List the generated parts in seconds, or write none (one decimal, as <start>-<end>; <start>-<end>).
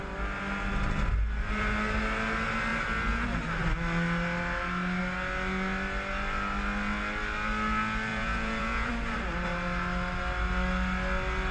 8.1-8.9